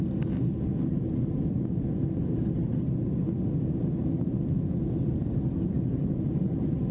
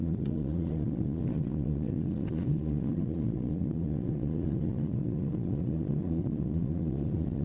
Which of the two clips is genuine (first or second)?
first